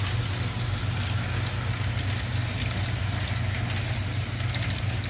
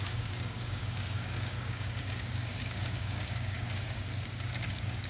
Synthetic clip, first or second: second